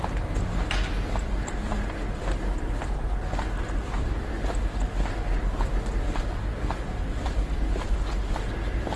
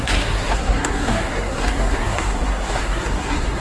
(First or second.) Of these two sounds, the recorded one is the first